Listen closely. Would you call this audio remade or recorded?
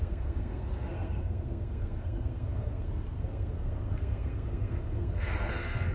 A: remade